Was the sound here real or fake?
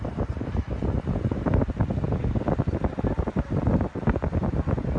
real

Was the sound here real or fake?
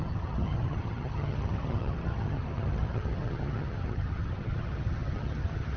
fake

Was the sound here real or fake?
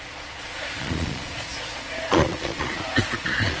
fake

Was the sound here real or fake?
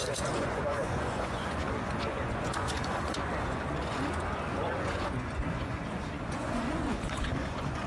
fake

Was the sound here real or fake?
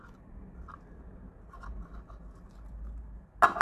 real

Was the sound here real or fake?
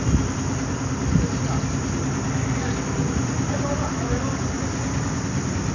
real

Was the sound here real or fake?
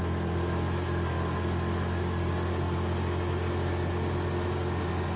real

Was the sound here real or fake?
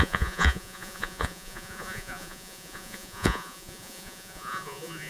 fake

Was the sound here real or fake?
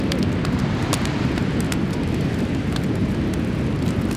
real